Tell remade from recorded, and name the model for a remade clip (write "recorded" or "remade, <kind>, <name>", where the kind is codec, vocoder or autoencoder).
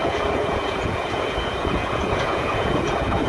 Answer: remade, vocoder, Vocos